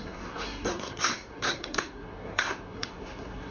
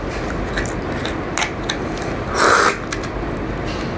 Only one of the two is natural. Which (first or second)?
second